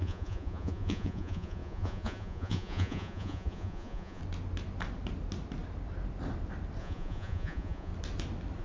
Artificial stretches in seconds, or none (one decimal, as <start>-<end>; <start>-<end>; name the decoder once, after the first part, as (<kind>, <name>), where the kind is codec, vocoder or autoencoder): 0.0-4.2 (vocoder, Vocos); 6.8-7.9